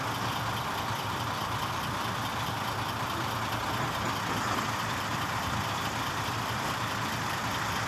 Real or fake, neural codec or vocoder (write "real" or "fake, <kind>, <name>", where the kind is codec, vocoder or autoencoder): fake, vocoder, BigVGAN v2